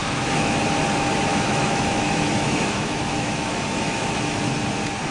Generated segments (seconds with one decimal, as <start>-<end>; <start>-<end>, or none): 0.0-0.6; 1.3-4.4